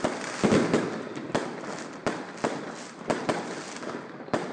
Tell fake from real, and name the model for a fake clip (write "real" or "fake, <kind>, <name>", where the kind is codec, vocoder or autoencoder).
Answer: real